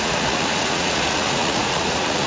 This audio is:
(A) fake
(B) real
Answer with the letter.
A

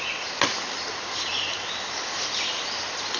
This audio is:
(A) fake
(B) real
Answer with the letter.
B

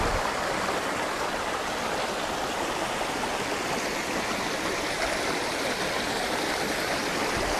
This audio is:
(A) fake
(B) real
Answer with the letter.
B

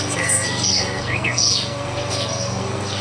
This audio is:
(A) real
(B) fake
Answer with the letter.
B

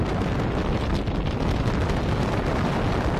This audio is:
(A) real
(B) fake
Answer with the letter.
A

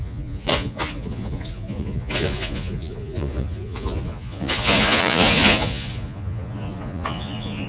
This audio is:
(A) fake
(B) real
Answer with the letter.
A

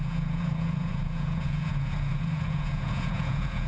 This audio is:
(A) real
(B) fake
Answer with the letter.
B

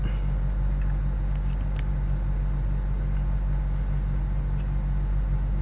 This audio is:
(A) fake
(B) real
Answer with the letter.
B